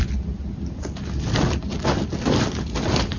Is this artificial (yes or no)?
no